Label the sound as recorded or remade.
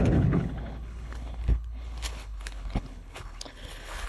remade